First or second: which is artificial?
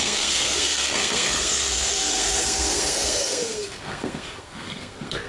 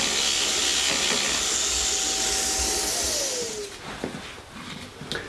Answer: first